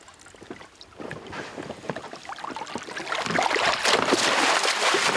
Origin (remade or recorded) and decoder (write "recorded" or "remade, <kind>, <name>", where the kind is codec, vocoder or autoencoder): recorded